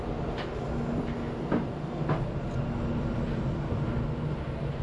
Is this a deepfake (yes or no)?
no